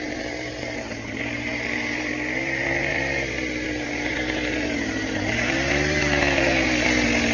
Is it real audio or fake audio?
fake